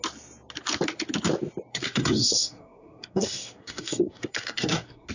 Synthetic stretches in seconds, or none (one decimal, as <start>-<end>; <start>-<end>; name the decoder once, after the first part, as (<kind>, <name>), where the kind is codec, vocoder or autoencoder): 1.7-5.1 (codec, SNAC)